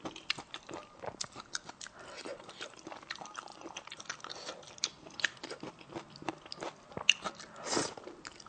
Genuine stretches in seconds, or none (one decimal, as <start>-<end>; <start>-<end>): 0.0-8.5